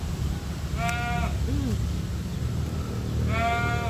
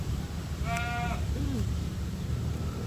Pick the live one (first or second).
first